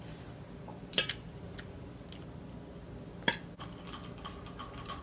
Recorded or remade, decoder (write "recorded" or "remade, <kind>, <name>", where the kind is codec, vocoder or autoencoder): recorded